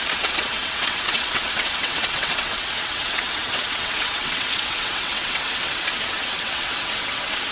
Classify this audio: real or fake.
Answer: fake